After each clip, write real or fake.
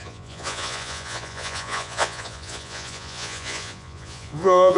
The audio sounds fake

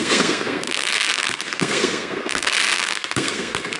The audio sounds fake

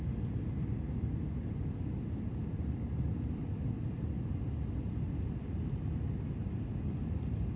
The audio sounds real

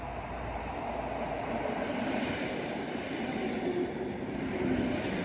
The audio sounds fake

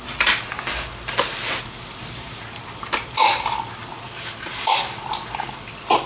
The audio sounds real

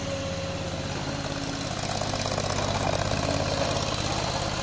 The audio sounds real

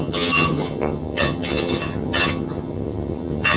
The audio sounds fake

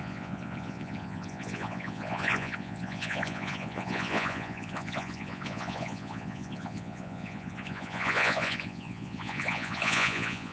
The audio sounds fake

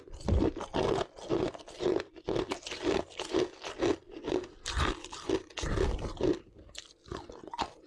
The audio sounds real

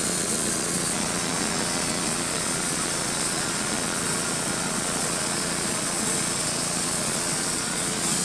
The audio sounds fake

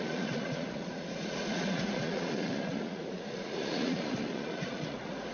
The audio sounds fake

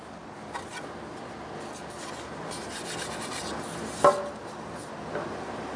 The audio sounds real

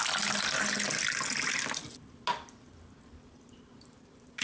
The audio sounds real